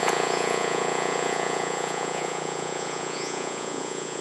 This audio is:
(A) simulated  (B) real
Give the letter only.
A